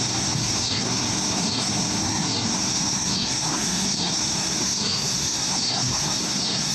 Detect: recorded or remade remade